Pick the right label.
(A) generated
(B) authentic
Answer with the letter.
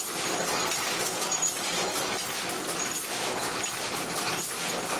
B